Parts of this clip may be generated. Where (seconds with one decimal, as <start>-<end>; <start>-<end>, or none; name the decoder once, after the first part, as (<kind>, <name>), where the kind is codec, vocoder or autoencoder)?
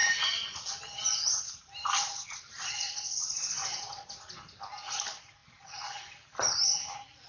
none